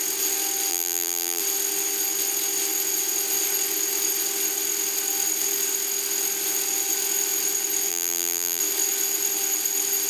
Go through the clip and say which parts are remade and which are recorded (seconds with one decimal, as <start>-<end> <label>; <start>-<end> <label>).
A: 0.0-0.7 recorded; 0.7-1.4 remade; 1.4-7.9 recorded; 7.9-8.6 remade; 8.6-10.1 recorded